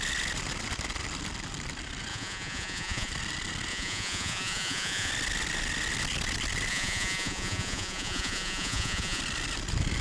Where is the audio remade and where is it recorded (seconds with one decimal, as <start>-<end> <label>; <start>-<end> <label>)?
0.0-2.1 recorded; 2.1-3.1 remade; 3.1-3.7 recorded; 3.7-5.1 remade; 5.1-6.7 recorded; 6.7-9.2 remade; 9.2-10.0 recorded